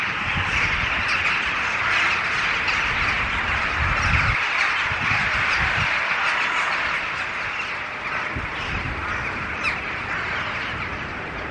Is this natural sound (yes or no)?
yes